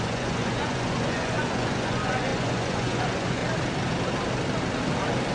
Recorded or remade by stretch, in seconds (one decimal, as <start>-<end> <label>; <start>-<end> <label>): 0.0-3.4 remade; 3.4-5.3 recorded